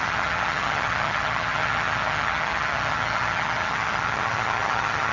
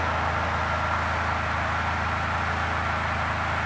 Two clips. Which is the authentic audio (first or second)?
second